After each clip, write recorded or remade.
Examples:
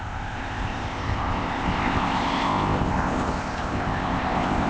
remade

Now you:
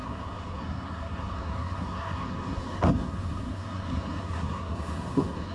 remade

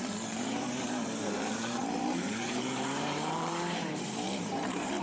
remade